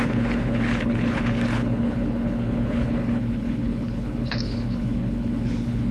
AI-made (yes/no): yes